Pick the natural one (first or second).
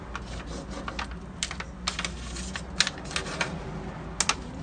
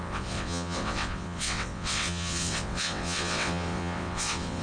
first